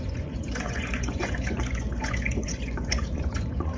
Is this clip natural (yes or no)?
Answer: no